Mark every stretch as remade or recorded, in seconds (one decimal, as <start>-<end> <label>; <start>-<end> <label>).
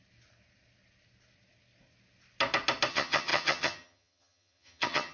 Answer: 0.0-2.9 recorded; 2.9-5.1 remade